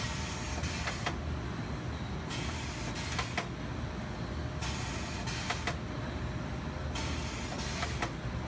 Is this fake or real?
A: real